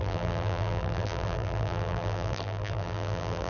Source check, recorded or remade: remade